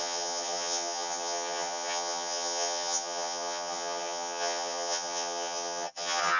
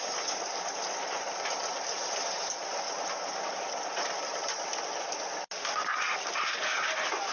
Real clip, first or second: second